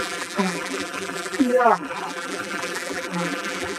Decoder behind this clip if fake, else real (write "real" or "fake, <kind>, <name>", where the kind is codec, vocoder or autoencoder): fake, vocoder, BigVGAN v2